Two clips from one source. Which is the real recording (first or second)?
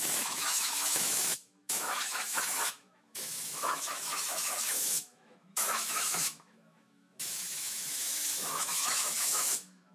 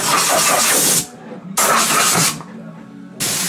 second